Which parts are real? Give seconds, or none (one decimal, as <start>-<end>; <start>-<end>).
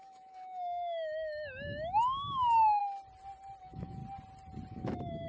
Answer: 2.8-3.6; 4.0-4.7